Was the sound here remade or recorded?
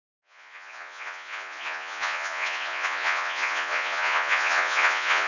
remade